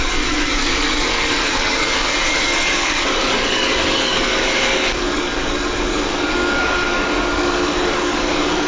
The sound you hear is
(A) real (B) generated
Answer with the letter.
B